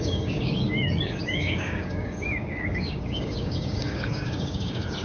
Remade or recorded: remade